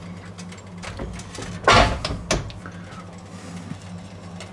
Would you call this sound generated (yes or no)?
no